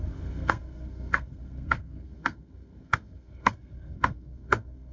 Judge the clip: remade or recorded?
remade